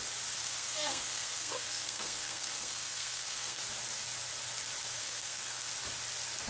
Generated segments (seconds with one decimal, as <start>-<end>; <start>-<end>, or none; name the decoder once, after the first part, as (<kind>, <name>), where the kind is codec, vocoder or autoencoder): 0.4-3.6 (codec, SNAC); 5.0-5.7

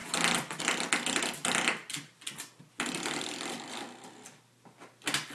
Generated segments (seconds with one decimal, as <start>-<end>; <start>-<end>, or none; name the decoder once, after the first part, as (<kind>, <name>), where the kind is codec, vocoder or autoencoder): none

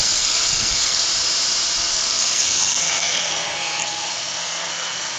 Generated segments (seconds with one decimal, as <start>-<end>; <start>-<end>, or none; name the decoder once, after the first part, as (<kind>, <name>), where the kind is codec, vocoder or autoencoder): 0.0-1.0 (codec, SNAC); 1.9-5.2

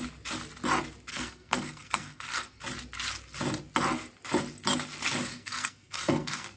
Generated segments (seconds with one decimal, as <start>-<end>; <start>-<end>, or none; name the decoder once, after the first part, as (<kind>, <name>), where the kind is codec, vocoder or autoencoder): 1.1-2.6 (codec, SNAC); 5.3-6.6

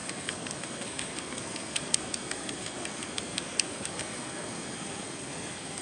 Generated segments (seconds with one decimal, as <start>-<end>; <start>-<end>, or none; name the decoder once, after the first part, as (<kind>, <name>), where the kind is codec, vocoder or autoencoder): 0.0-5.8 (codec, SNAC)

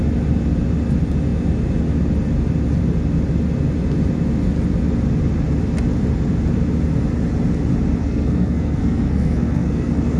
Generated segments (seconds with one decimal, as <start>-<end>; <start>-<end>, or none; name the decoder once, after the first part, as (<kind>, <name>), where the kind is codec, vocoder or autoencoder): 8.0-10.2 (codec, SNAC)